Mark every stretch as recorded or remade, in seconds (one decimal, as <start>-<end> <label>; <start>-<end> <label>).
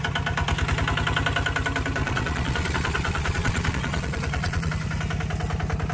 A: 0.0-2.0 recorded; 2.0-4.7 remade; 4.7-5.9 recorded